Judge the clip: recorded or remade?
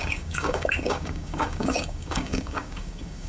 remade